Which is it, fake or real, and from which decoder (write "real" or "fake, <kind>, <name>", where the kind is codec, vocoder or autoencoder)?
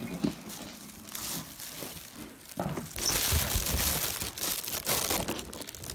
real